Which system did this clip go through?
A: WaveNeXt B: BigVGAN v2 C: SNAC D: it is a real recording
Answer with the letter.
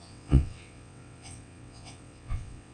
A